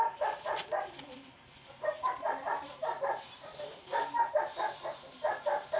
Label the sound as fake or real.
fake